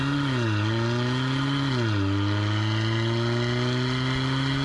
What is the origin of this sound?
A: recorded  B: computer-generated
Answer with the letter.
A